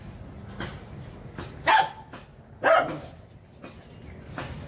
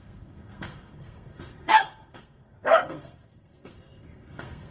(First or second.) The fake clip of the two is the second